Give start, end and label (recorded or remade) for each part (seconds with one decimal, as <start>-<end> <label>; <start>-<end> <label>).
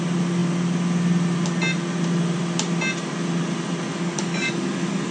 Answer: 0.0-3.9 recorded; 3.9-5.1 remade